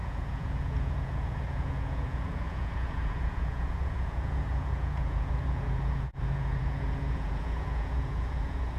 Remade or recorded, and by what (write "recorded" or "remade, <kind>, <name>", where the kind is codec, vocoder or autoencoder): remade, vocoder, Vocos